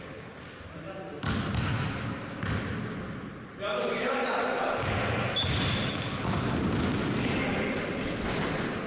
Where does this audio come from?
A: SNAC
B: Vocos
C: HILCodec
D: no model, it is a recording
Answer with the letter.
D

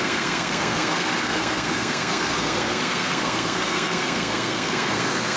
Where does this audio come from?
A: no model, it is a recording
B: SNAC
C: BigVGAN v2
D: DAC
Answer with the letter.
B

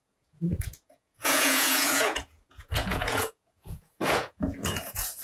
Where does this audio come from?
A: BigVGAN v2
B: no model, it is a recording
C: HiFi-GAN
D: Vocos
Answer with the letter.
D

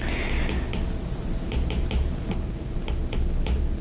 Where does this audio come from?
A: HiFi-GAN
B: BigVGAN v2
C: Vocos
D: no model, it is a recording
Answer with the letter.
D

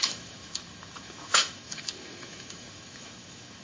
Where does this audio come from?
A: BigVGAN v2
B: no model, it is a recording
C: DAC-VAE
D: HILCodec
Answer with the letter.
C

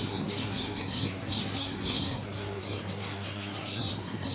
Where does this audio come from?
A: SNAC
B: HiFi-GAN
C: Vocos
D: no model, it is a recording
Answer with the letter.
A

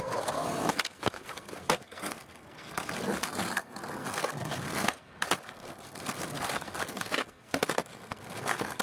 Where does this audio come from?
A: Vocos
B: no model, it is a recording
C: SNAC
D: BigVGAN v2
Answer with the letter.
C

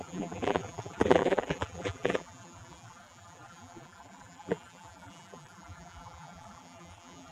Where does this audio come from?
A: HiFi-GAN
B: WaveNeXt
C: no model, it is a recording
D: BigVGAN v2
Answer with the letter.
D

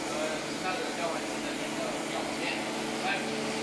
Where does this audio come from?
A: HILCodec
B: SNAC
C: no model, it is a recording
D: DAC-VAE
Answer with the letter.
C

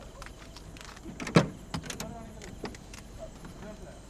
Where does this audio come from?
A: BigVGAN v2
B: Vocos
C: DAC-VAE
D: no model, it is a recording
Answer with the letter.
D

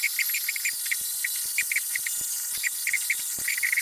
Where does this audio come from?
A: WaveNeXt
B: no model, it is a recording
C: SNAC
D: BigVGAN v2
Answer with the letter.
B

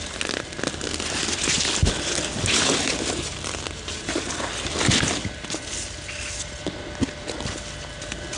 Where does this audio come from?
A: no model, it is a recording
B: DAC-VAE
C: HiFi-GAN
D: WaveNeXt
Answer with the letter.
A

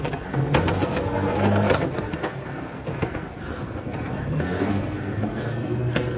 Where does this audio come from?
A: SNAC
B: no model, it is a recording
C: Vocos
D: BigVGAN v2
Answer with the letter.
A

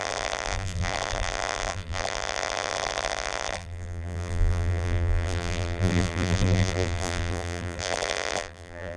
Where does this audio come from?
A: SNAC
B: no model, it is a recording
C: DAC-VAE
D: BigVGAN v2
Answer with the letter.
D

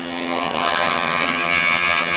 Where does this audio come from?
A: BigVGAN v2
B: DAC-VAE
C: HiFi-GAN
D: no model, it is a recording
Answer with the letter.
C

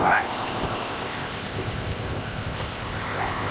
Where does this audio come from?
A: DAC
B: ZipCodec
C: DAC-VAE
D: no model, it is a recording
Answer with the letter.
B